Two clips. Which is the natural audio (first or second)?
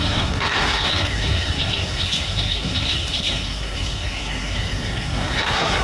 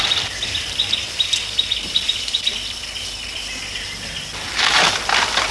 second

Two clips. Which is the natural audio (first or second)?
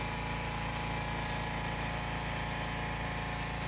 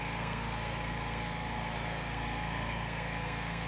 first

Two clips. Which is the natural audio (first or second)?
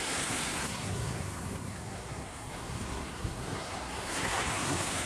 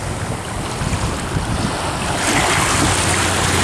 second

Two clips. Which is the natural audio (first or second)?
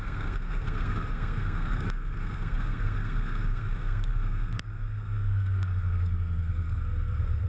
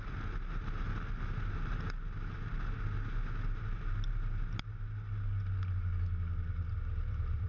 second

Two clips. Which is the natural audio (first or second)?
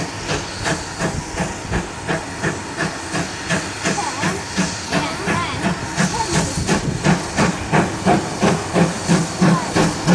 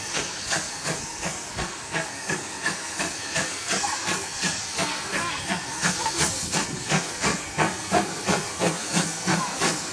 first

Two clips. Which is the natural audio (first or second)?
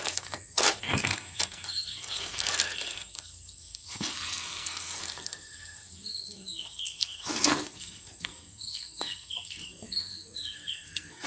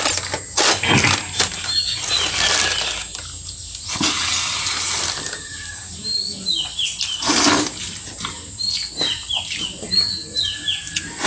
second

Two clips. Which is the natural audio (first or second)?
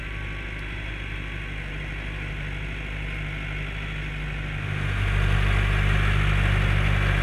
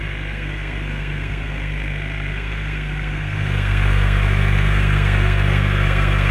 first